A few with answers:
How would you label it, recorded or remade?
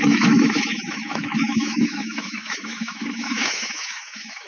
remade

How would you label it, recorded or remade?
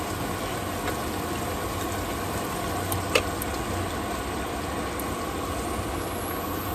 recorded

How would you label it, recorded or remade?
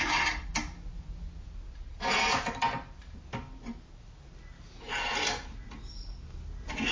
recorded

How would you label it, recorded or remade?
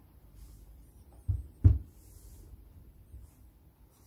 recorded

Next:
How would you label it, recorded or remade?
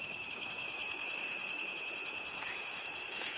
remade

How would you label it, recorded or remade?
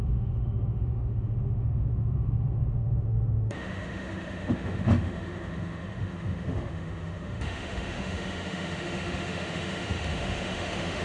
remade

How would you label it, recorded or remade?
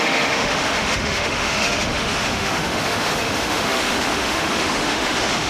remade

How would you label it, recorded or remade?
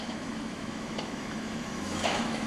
remade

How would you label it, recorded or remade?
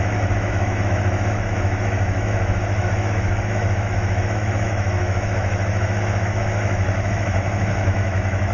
remade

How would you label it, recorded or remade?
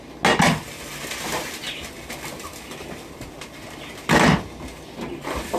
recorded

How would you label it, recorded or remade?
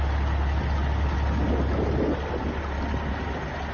recorded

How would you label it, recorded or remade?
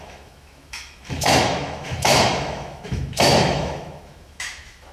remade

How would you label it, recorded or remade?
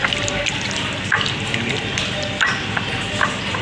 recorded